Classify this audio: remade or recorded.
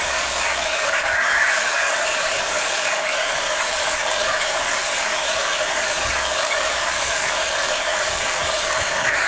remade